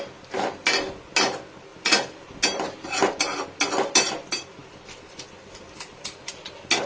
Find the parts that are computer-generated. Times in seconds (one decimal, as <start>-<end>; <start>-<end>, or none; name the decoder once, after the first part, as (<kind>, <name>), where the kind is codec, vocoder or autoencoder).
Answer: 1.7-2.2 (vocoder, BigVGAN v2); 4.6-6.3